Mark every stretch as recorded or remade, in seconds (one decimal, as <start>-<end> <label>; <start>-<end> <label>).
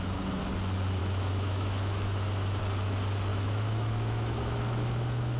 0.0-1.0 recorded; 1.0-2.6 remade; 2.6-3.3 recorded; 3.3-5.4 remade